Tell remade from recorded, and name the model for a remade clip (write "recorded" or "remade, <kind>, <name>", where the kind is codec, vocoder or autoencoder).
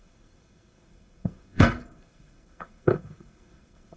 remade, codec, SNAC